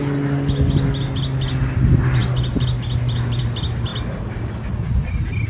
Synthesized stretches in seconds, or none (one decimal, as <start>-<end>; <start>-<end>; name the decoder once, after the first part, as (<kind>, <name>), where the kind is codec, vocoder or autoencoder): none